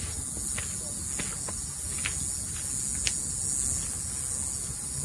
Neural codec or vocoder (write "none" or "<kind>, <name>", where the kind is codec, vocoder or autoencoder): none